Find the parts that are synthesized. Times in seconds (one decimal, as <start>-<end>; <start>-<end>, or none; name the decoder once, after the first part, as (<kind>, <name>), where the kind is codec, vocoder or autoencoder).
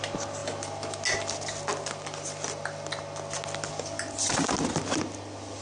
none